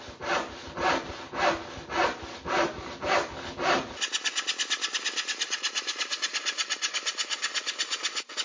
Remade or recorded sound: recorded